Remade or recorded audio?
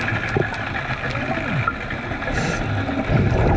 recorded